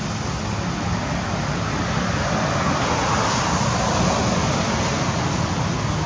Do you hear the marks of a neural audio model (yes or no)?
no